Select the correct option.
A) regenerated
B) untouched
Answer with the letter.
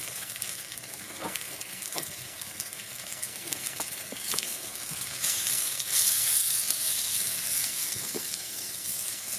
A